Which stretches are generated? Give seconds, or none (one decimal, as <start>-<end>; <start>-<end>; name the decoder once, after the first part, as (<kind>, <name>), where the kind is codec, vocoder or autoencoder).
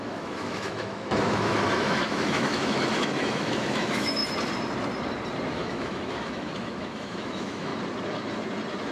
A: 0.0-4.2 (autoencoder, DAC-VAE); 5.5-7.7